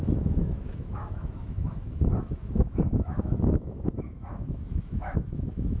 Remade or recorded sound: remade